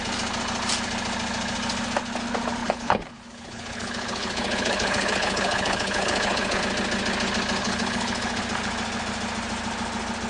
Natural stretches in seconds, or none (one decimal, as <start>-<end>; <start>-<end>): 0.0-2.6; 6.6-7.6; 8.4-10.3